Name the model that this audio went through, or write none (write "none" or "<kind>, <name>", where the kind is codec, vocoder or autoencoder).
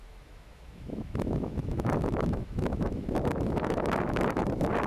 autoencoder, DAC-VAE